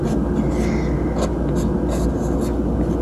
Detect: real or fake real